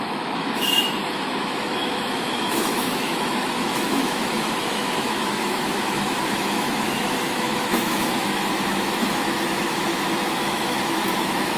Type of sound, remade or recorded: remade